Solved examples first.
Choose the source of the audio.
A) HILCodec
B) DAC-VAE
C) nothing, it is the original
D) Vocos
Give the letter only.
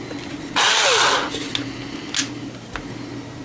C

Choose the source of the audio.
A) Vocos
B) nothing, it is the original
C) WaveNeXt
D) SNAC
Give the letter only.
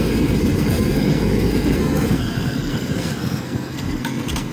D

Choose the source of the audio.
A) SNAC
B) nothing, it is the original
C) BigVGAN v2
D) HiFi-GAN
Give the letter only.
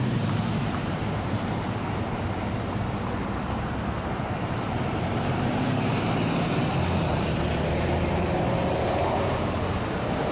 C